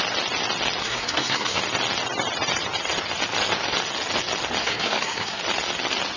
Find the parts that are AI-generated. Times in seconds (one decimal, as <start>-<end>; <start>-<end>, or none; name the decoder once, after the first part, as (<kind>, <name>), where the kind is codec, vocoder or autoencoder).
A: 0.8-1.6 (codec, SNAC); 4.6-5.4